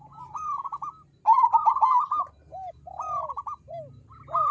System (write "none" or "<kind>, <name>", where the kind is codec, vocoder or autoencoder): none